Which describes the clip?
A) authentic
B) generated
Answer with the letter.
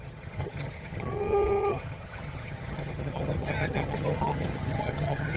B